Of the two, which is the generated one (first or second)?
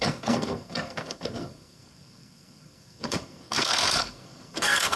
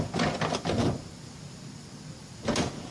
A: first